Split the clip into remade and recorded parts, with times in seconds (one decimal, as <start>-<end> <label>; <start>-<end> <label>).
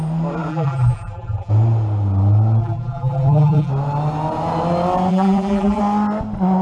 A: 0.0-0.5 recorded; 0.5-1.5 remade; 1.5-2.6 recorded; 2.6-3.7 remade; 3.7-5.1 recorded; 5.1-5.8 remade; 5.8-6.6 recorded